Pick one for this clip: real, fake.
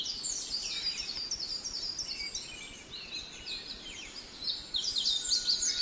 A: real